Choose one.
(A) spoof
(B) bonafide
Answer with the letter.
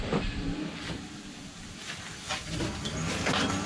B